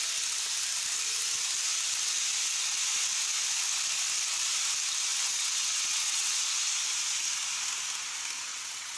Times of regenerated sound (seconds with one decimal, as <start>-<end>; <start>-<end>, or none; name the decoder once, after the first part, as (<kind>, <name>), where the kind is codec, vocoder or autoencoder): 5.1-6.4 (vocoder, WaveNeXt); 8.5-9.0